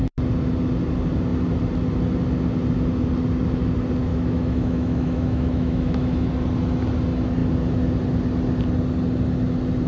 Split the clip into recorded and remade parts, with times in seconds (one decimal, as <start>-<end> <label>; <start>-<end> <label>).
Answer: 0.0-4.1 recorded; 4.1-6.3 remade; 6.3-9.9 recorded